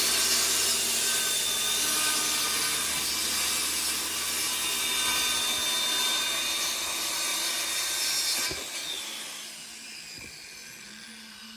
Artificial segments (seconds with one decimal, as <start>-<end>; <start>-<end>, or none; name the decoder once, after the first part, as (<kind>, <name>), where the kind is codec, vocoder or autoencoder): none